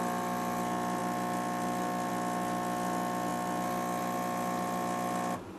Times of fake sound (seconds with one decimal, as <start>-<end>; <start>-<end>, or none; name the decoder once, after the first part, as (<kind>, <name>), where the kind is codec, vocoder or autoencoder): none